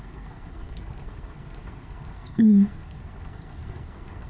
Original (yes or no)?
no